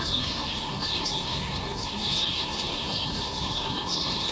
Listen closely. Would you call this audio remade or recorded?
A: remade